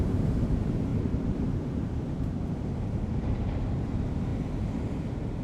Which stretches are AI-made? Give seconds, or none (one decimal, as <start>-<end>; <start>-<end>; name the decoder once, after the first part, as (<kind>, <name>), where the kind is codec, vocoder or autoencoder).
0.9-3.6 (vocoder, BigVGAN v2)